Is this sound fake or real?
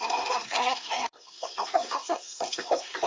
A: fake